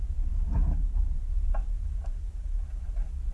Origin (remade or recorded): recorded